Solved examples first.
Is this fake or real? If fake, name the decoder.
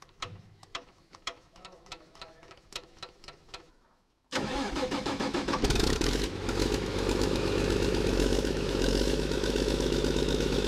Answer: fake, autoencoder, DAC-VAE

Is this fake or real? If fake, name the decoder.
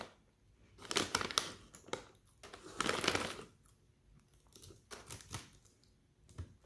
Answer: real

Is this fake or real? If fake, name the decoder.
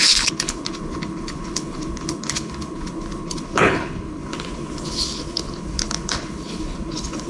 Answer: fake, codec, HILCodec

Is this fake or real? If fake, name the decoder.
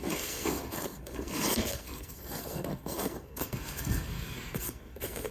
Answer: fake, codec, SNAC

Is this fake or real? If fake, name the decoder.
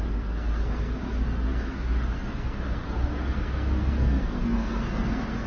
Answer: fake, codec, SNAC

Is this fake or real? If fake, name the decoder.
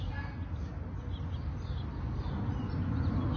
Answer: real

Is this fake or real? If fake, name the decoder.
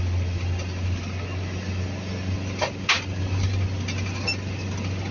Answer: real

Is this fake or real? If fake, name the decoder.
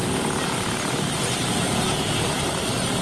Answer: real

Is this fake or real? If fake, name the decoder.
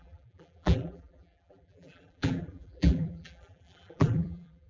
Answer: fake, vocoder, BigVGAN v2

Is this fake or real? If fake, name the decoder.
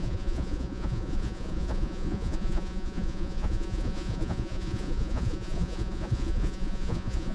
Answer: fake, vocoder, Vocos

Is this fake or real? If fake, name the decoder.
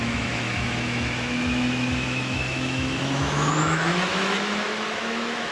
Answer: fake, autoencoder, DAC-VAE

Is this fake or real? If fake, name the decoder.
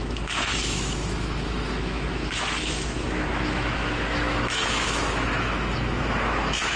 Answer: fake, autoencoder, DAC-VAE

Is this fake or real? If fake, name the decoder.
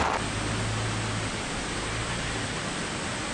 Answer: real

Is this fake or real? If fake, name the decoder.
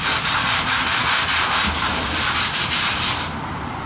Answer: real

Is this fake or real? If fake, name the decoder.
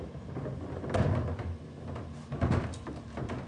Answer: real